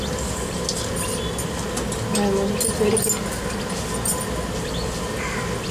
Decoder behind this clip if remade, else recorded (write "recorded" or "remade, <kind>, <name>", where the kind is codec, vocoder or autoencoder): recorded